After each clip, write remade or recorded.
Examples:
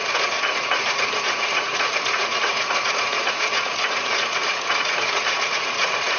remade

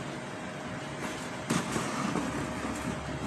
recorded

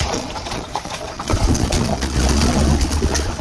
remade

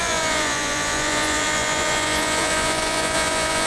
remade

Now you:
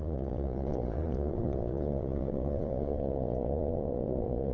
remade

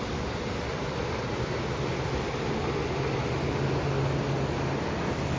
recorded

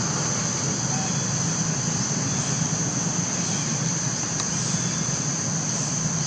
recorded